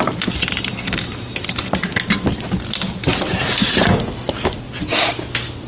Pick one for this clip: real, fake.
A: real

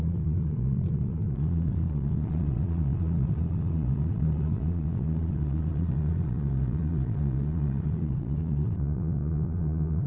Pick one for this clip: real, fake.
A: fake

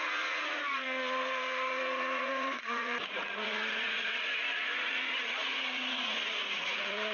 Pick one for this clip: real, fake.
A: fake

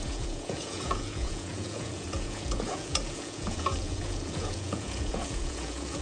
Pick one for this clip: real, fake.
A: fake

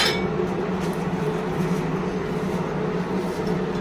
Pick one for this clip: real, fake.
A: real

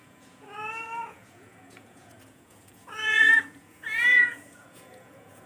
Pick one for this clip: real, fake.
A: fake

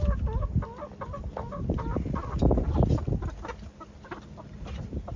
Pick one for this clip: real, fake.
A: real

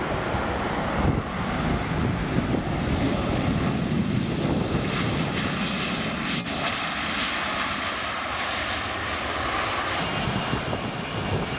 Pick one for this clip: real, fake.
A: real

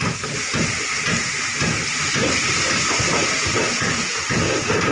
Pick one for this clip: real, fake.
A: real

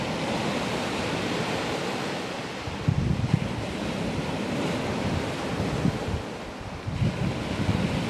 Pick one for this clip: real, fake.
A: real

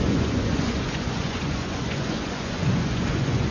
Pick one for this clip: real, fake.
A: fake